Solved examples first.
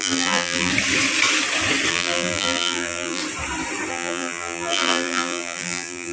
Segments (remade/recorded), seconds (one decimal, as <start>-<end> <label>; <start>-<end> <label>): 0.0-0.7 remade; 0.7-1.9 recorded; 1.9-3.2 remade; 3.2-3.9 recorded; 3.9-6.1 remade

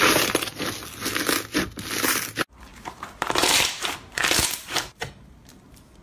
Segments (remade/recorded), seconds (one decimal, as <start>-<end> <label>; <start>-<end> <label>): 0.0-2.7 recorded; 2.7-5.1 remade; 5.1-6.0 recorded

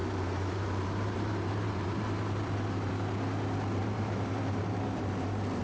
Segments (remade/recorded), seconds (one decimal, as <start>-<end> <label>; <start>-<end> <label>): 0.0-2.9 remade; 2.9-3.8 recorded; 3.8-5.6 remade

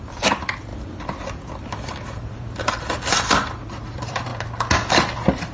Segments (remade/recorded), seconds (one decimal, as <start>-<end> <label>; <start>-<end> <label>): 0.0-4.3 remade; 4.3-4.9 recorded; 4.9-5.5 remade

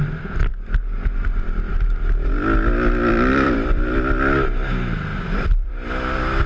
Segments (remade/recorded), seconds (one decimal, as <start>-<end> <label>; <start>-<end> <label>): 0.0-3.3 recorded; 3.3-4.0 remade; 4.0-5.1 recorded; 5.1-5.7 remade; 5.7-6.5 recorded

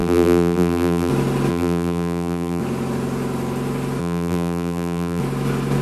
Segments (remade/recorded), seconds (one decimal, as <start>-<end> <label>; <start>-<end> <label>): 0.0-1.1 remade; 1.1-1.5 recorded; 1.5-2.6 remade; 2.6-4.0 recorded; 4.0-5.2 remade; 5.2-5.8 recorded

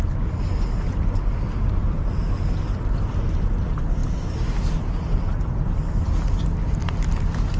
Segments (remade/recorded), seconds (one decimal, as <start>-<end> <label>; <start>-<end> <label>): 0.0-4.0 recorded; 4.0-4.7 remade; 4.7-6.8 recorded; 6.8-7.6 remade

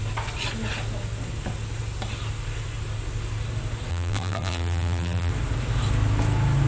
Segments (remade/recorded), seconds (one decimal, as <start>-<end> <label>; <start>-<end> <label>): 0.0-3.9 recorded; 3.9-5.3 remade; 5.3-6.7 recorded